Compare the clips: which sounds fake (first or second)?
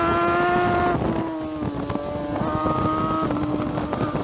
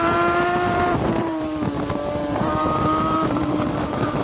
second